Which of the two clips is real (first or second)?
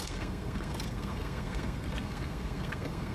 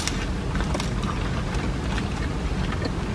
second